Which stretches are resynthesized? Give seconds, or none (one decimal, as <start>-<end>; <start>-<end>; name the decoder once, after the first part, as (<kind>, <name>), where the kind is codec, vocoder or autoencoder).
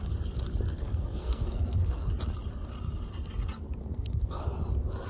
0.7-2.1 (codec, SNAC); 3.8-4.4